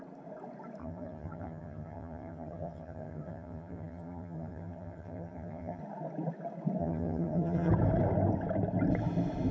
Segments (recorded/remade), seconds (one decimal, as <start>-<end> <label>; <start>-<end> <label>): 0.0-0.8 recorded; 0.8-5.8 remade; 5.8-6.8 recorded; 6.8-7.7 remade; 7.7-9.5 recorded